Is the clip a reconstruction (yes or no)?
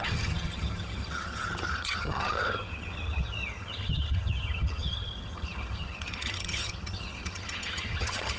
yes